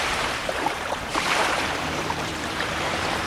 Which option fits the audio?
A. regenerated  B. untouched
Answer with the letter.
A